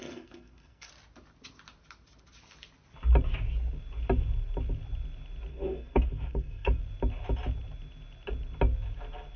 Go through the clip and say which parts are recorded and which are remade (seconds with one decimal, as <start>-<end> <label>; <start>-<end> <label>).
0.0-0.9 remade; 0.9-5.5 recorded; 5.5-6.8 remade; 6.8-9.4 recorded